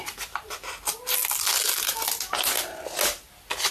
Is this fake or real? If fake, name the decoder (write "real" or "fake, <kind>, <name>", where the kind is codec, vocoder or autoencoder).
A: real